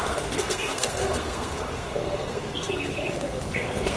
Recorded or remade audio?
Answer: remade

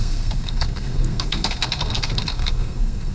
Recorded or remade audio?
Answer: remade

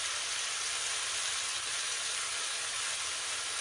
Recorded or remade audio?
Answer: recorded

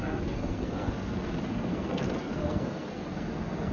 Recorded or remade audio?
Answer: remade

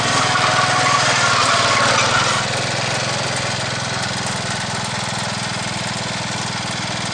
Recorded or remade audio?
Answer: recorded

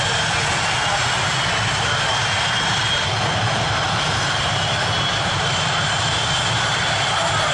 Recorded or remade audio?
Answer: recorded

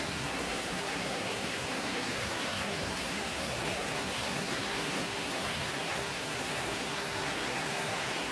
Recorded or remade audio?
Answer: remade